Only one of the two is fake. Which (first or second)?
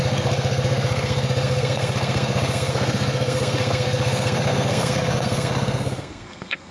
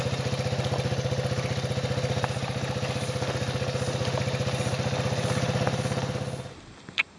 first